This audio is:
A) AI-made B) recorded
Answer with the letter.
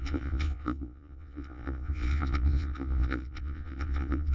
A